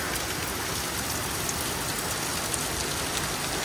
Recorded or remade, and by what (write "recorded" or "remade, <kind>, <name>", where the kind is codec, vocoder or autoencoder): recorded